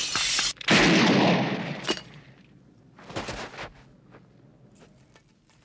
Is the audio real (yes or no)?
yes